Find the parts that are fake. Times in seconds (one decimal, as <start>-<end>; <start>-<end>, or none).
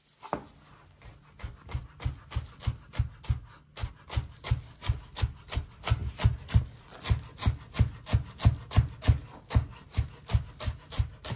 none